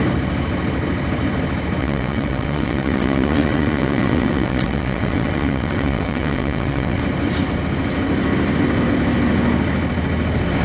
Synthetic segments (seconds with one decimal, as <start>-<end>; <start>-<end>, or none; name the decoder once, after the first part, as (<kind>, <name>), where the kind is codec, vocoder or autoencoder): 1.8-7.0 (vocoder, WaveNeXt)